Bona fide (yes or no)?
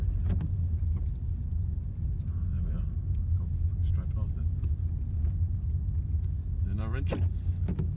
yes